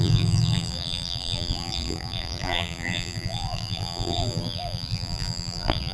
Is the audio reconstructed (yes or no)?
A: yes